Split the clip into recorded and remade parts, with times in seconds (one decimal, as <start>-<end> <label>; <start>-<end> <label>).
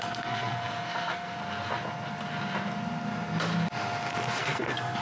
0.0-1.4 remade; 1.4-4.4 recorded; 4.4-5.0 remade